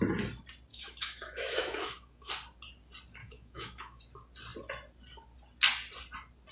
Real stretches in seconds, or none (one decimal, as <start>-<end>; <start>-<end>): 0.0-0.7; 2.3-3.2; 4.0-6.5